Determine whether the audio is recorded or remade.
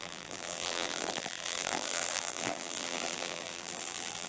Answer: remade